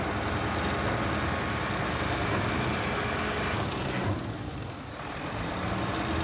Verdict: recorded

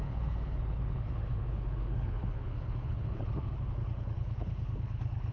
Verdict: remade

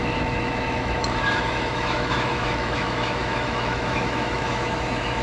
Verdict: remade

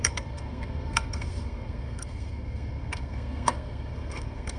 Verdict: remade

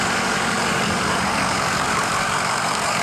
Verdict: remade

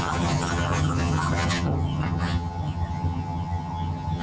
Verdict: remade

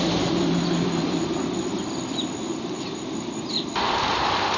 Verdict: remade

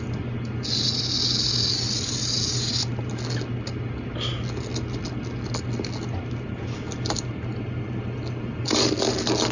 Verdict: recorded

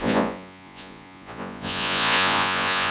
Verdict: remade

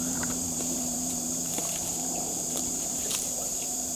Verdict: remade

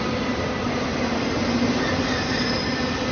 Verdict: recorded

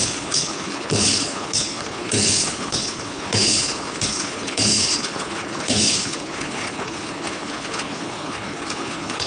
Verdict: remade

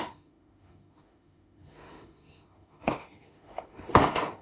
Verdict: remade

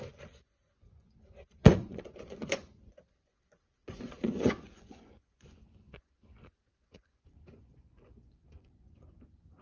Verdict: remade